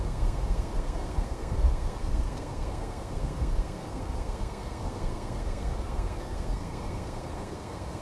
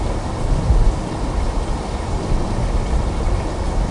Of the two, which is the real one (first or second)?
second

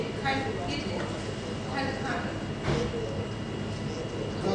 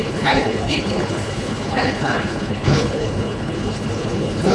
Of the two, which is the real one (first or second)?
first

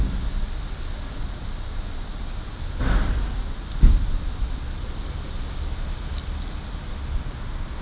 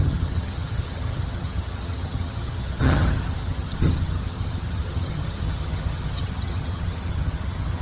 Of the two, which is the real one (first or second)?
first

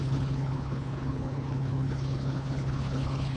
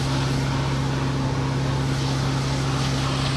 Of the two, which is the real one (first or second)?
second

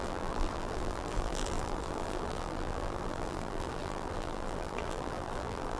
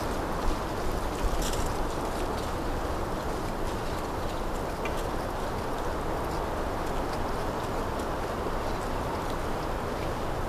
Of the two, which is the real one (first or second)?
second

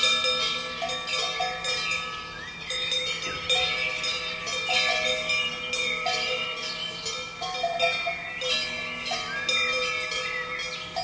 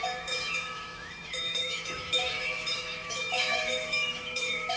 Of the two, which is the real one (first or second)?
first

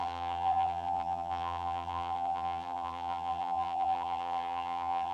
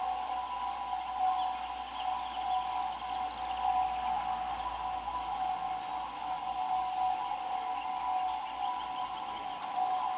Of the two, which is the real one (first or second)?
second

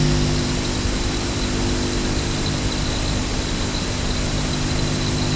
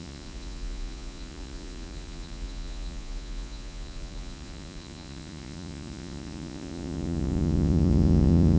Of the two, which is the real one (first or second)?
first